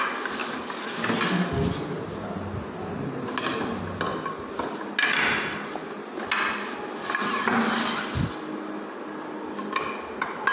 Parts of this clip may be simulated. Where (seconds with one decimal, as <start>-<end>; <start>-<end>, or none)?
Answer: none